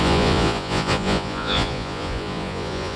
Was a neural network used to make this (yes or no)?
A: yes